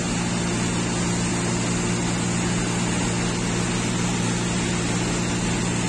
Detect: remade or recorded recorded